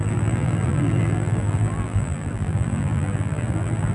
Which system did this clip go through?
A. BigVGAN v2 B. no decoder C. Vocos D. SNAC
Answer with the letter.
A